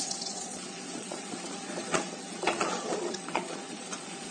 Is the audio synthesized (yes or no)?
yes